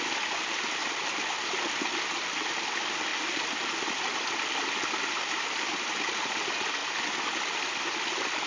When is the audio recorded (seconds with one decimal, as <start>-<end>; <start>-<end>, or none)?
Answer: 0.0-8.5